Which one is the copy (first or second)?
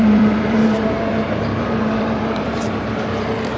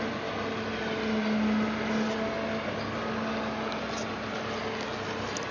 first